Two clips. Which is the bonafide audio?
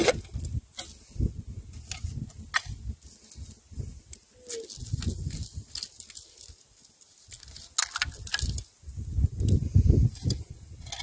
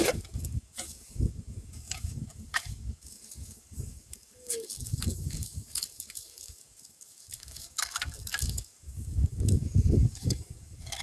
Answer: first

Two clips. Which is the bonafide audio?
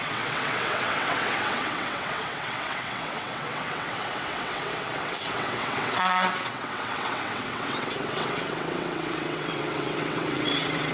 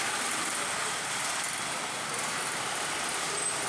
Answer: second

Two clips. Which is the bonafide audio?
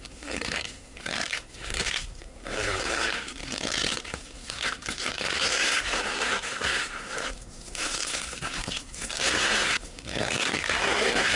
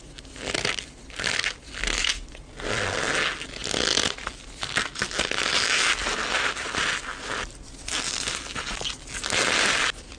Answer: second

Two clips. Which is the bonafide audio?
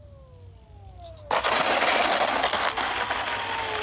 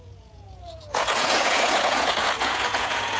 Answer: first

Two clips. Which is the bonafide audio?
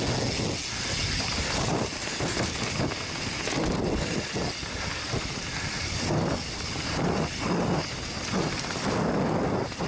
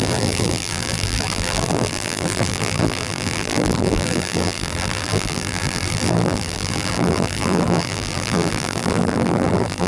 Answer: first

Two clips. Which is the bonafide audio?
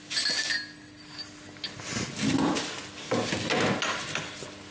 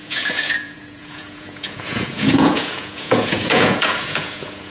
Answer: first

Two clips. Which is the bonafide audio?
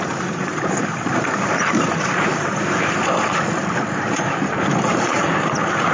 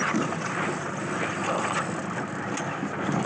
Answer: second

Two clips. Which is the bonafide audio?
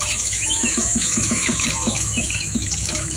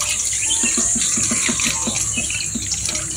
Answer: second